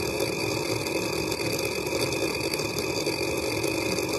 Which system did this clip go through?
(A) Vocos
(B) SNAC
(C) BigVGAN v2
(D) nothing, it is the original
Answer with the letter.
D